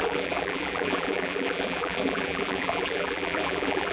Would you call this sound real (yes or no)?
no